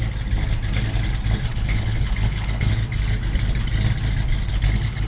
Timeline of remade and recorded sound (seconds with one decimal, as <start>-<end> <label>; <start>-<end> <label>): 0.0-1.5 recorded; 1.5-2.7 remade; 2.7-4.5 recorded; 4.5-5.1 remade